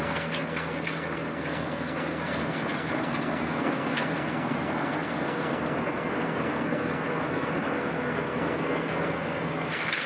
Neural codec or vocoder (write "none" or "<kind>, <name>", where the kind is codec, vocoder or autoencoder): codec, SNAC